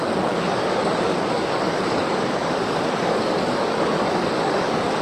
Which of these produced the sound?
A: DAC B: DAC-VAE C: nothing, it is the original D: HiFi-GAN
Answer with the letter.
A